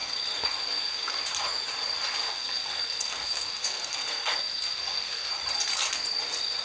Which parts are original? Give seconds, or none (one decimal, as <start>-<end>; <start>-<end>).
1.2-2.2; 5.3-6.6